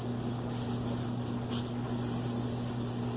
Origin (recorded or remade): recorded